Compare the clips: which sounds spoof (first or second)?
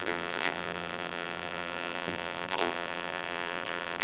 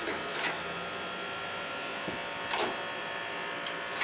first